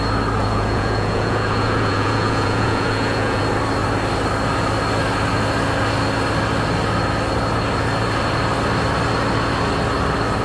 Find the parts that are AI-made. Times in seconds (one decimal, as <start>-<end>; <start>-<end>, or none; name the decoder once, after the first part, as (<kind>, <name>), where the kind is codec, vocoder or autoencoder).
0.4-3.4 (vocoder, Vocos)